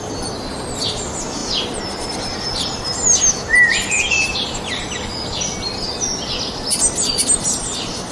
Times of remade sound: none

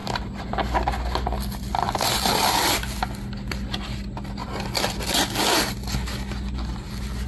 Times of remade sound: none

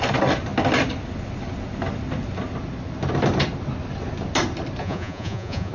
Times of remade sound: 4.8-5.7 (vocoder, Vocos)

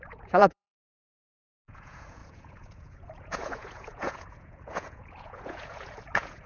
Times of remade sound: 0.0-6.5 (vocoder, Vocos)